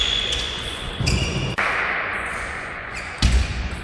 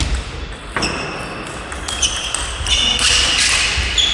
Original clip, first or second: second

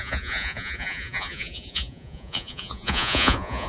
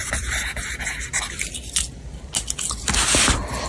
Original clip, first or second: second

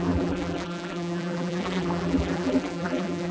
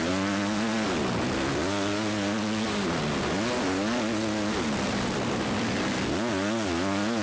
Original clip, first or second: second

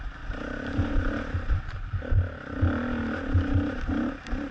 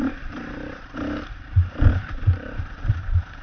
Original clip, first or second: first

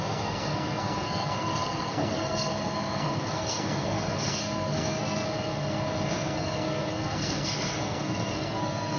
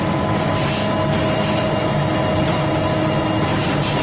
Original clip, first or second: second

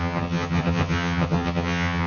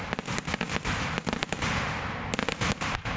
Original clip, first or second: second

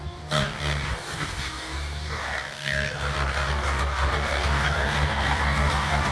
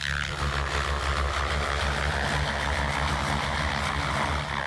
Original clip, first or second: second